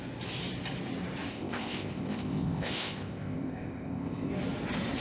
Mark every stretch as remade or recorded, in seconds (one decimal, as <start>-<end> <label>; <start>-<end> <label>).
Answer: 0.0-1.3 recorded; 1.3-4.3 remade; 4.3-5.0 recorded